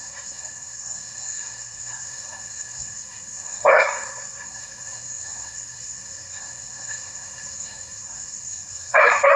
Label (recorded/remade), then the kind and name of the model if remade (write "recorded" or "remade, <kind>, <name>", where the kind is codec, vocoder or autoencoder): remade, codec, SNAC